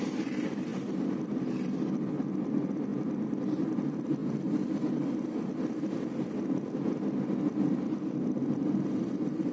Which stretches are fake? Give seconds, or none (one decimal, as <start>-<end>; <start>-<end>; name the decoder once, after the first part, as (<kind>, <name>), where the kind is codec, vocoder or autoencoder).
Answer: none